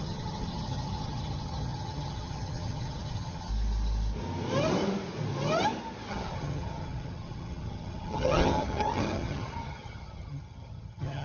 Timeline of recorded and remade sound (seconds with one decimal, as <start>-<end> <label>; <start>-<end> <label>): 0.0-3.5 remade; 3.5-6.1 recorded; 6.1-11.2 remade